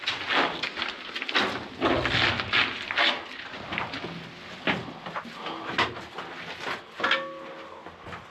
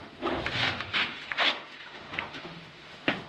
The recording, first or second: first